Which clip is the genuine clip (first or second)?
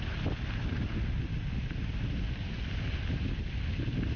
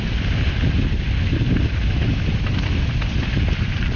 first